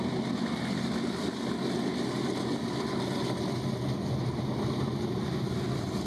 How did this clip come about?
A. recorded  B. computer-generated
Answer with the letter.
A